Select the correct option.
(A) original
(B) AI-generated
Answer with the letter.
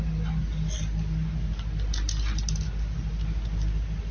A